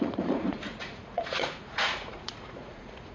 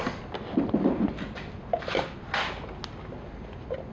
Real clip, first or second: second